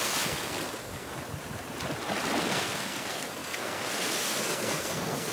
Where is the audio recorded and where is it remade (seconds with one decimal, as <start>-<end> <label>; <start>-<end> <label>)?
0.0-1.1 remade; 1.1-2.4 recorded; 2.4-5.3 remade